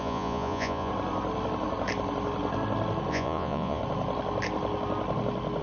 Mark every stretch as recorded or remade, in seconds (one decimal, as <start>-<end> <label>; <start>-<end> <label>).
0.0-0.9 remade; 0.9-3.1 recorded; 3.1-3.8 remade; 3.8-5.6 recorded